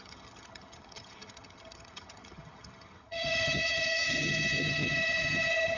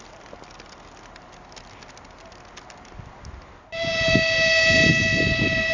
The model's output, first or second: first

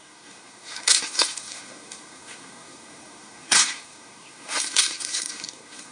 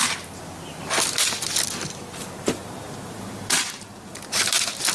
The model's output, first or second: first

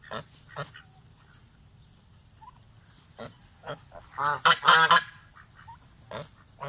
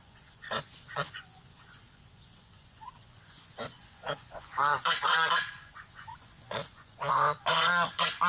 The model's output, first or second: second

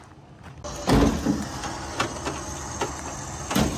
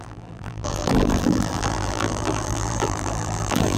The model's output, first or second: second